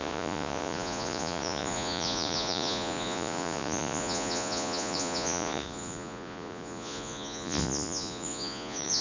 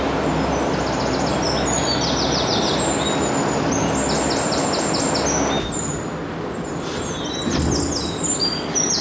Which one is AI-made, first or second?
first